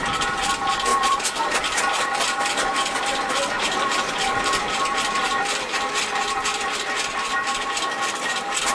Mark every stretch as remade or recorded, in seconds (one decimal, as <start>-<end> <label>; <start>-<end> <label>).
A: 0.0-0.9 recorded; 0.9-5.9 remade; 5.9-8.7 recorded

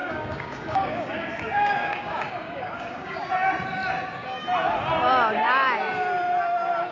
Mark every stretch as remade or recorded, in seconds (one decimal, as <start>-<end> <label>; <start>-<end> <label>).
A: 0.0-3.3 remade; 3.3-6.9 recorded

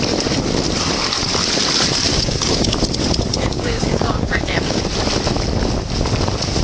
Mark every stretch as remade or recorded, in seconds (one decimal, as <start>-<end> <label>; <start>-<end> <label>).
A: 0.0-2.1 recorded; 2.1-2.7 remade; 2.7-3.3 recorded; 3.3-4.8 remade; 4.8-6.6 recorded

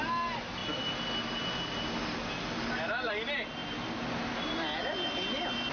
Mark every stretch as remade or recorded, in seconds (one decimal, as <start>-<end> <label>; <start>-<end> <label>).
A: 0.0-5.7 recorded

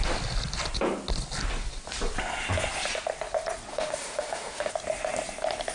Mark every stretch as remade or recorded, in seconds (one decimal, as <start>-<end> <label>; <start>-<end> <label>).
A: 0.0-3.7 recorded; 3.7-4.7 remade; 4.7-5.7 recorded

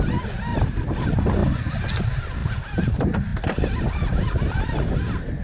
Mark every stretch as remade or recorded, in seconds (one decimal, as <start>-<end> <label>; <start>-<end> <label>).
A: 0.0-0.5 recorded; 0.5-1.0 remade; 1.0-5.4 recorded